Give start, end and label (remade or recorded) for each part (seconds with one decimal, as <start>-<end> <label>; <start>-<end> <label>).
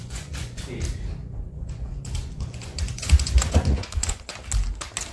0.0-0.6 remade; 0.6-1.2 recorded; 1.2-4.3 remade; 4.3-5.1 recorded